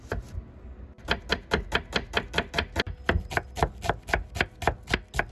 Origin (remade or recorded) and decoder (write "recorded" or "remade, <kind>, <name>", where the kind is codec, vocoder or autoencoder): recorded